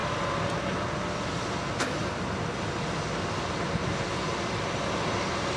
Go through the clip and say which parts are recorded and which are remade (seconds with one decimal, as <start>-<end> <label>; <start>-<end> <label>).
0.0-5.6 recorded